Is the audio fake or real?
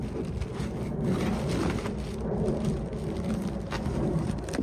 real